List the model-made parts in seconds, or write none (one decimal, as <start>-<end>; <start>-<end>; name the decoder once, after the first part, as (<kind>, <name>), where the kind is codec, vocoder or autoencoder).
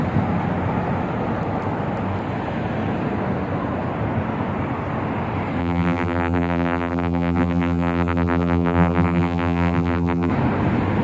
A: 5.6-10.3 (vocoder, BigVGAN v2)